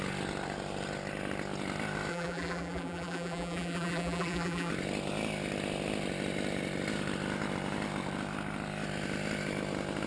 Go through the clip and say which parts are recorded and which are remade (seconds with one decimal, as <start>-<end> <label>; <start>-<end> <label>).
0.0-2.1 recorded; 2.1-4.7 remade; 4.7-10.1 recorded